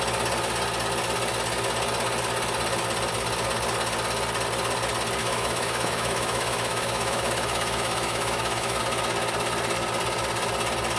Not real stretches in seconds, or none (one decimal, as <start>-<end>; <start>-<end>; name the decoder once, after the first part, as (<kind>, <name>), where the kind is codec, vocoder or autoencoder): 5.2-8.8 (autoencoder, DAC-VAE)